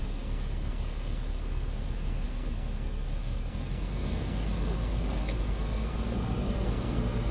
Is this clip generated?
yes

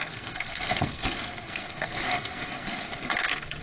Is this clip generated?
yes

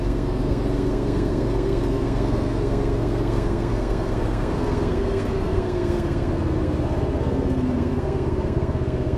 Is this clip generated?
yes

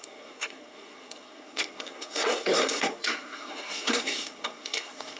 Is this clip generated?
yes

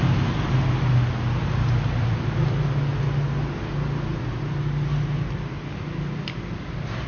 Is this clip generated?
no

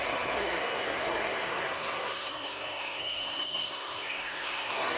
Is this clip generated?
yes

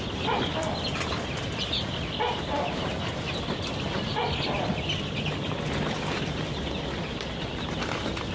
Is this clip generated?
no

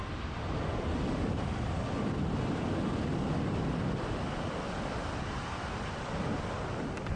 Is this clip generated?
no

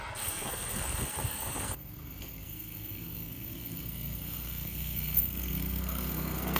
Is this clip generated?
yes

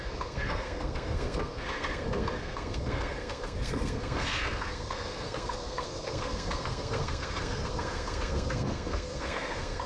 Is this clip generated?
yes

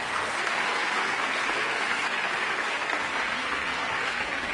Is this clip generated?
yes